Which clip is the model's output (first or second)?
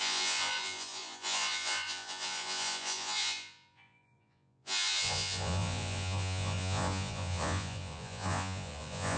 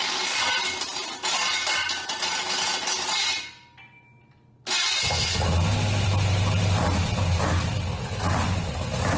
first